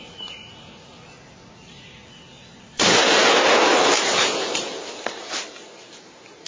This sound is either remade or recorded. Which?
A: remade